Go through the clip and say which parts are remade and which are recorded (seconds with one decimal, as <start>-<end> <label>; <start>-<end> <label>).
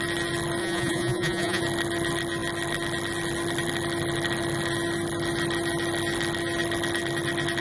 0.0-0.6 recorded; 0.6-1.6 remade; 1.6-7.6 recorded